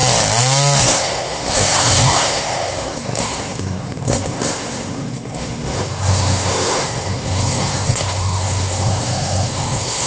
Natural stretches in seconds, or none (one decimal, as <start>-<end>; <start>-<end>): 0.0-0.8